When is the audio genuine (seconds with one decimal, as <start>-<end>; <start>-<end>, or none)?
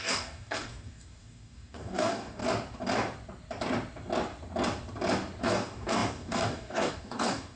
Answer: 2.4-5.4